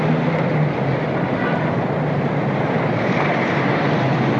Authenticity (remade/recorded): recorded